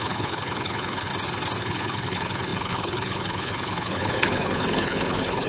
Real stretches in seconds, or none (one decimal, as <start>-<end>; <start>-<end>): 1.1-1.6